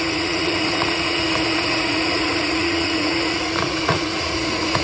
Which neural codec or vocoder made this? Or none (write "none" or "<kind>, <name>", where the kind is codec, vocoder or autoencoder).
vocoder, Vocos